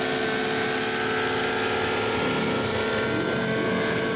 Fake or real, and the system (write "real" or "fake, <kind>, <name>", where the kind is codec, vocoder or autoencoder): real